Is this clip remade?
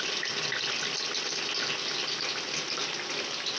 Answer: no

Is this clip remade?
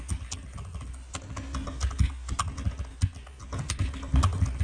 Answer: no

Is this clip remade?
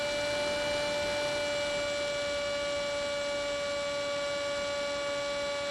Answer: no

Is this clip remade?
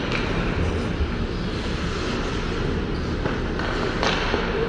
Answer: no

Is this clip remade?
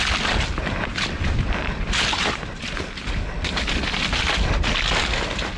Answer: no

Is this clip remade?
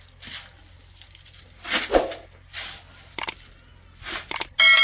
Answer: no